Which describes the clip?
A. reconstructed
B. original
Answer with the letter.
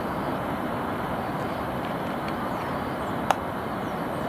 A